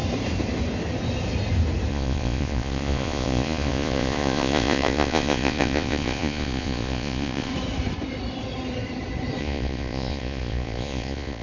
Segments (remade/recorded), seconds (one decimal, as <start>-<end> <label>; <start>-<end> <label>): 0.0-1.9 recorded; 1.9-7.5 remade; 7.5-9.4 recorded; 9.4-11.4 remade